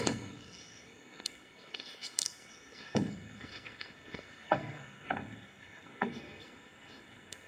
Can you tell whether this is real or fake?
fake